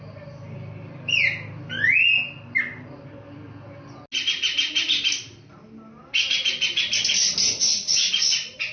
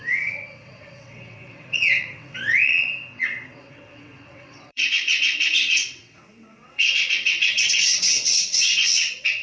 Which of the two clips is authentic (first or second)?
first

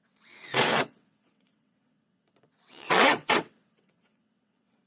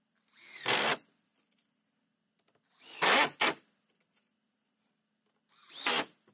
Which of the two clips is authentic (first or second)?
second